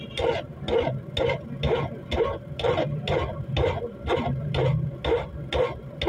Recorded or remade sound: recorded